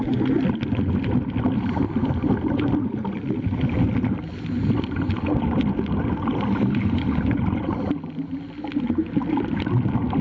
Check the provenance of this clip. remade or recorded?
recorded